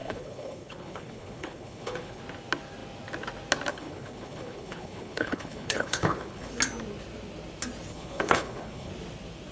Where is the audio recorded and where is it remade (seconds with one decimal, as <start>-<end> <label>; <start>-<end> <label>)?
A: 0.0-2.2 remade; 2.2-3.7 recorded; 3.7-6.5 remade; 6.5-7.9 recorded; 7.9-8.9 remade; 8.9-9.5 recorded

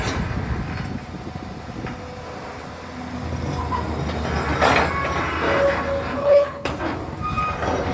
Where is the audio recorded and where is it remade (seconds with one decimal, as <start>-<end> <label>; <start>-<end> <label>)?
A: 0.0-6.2 recorded; 6.2-6.7 remade; 6.7-7.9 recorded